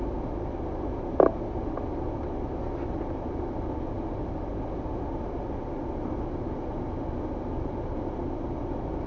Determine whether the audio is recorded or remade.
recorded